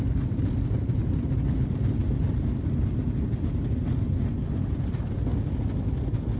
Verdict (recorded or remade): recorded